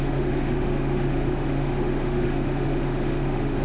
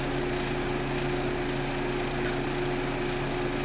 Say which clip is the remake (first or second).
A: first